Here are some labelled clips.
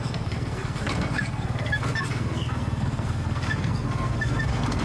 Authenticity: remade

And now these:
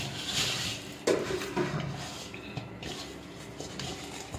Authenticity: recorded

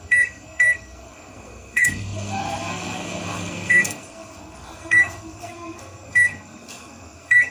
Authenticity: remade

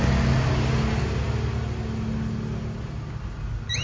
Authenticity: recorded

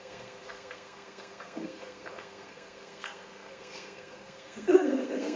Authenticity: remade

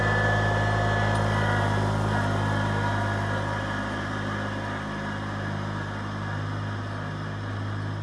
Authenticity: recorded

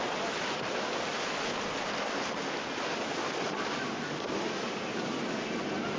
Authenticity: recorded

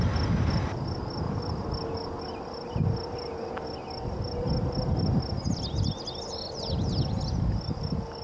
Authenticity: recorded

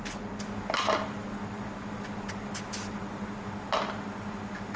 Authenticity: recorded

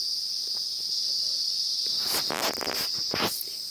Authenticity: recorded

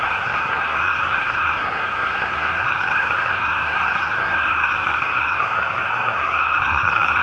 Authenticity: remade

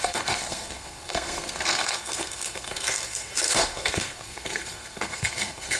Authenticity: remade